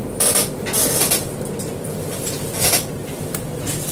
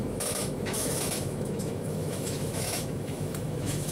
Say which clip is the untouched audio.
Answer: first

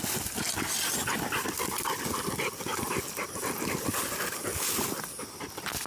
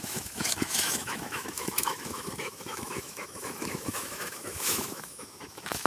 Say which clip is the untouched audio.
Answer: first